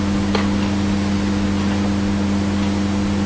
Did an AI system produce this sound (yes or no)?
no